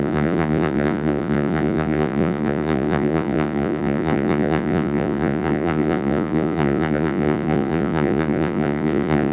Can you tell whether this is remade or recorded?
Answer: remade